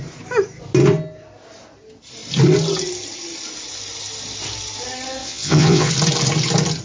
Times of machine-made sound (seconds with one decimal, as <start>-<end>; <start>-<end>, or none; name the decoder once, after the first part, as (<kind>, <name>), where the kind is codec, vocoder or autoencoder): 5.2-5.9 (vocoder, WaveNeXt)